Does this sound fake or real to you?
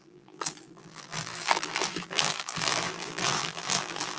fake